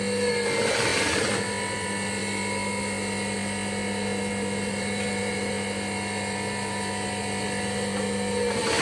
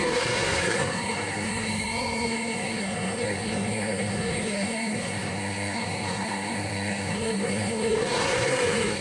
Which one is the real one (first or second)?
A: first